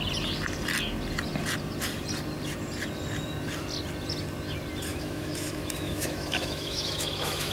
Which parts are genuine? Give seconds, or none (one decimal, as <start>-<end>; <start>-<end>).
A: 0.0-4.9